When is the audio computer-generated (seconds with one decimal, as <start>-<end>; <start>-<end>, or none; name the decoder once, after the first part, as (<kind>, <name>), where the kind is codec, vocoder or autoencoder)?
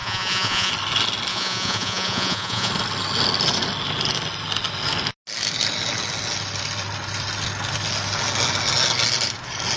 0.0-0.7 (vocoder, Vocos); 1.3-2.7